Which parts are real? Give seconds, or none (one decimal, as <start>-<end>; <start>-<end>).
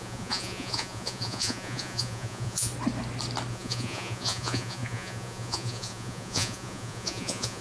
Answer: 2.7-3.5